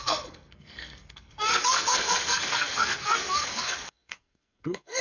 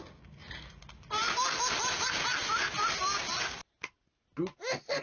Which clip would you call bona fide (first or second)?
second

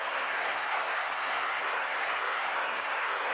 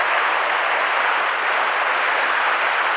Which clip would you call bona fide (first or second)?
second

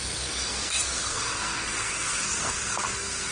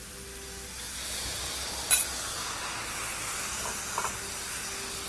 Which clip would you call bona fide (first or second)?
second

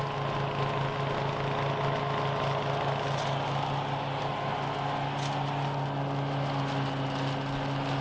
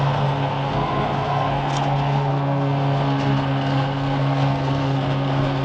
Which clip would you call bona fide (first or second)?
first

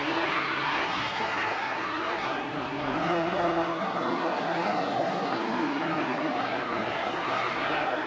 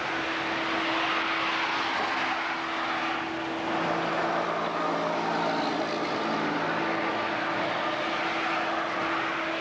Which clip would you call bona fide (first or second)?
second